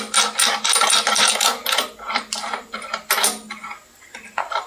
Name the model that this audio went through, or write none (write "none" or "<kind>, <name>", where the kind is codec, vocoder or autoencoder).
none